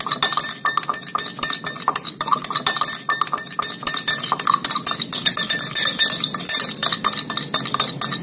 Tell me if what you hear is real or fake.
real